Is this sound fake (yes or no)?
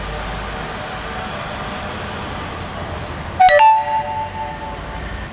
no